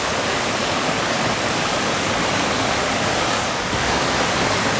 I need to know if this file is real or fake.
fake